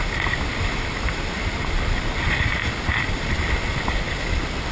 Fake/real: real